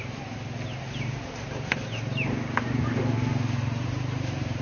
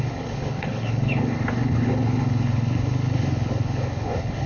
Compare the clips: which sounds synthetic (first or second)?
second